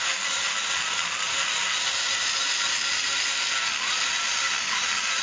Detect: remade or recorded recorded